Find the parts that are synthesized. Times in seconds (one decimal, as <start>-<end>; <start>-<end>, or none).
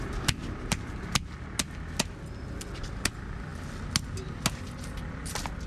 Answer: 0.4-1.0